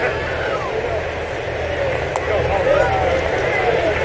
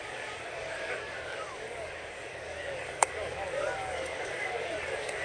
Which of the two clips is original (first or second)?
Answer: first